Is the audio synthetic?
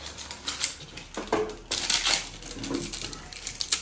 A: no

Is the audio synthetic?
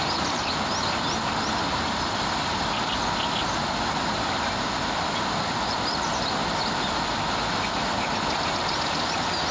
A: no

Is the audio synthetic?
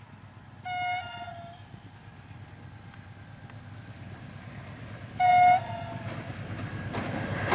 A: no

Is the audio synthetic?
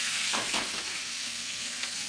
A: yes